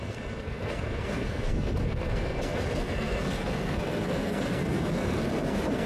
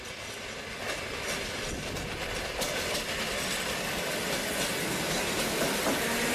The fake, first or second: first